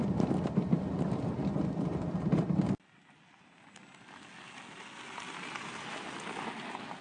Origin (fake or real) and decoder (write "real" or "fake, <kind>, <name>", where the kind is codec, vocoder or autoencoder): real